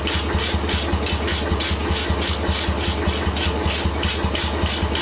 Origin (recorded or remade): recorded